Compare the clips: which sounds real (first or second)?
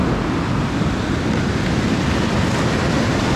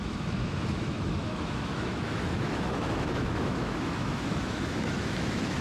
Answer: first